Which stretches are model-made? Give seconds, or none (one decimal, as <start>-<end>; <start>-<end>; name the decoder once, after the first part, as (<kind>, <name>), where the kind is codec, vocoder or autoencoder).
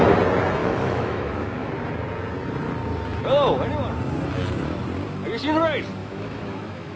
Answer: 0.6-1.7 (autoencoder, DAC-VAE); 6.0-7.0